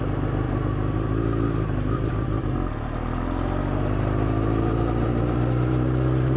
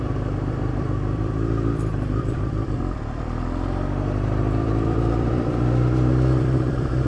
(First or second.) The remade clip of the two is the second